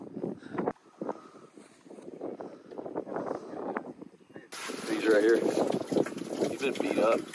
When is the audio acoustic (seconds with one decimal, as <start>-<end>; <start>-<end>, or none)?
0.0-7.3